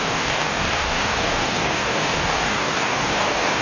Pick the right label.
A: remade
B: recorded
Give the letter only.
A